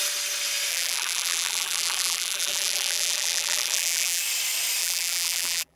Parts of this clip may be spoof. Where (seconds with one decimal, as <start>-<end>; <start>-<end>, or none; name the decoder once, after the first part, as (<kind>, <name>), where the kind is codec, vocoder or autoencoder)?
0.7-4.2 (vocoder, BigVGAN v2); 4.8-5.8